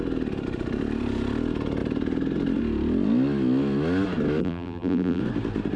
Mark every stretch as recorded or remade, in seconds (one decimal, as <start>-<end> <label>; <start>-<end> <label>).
0.0-4.4 recorded; 4.4-5.2 remade; 5.2-5.8 recorded